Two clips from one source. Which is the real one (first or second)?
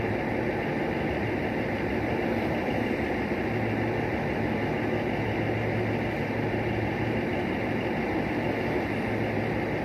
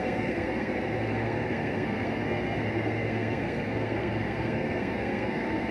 first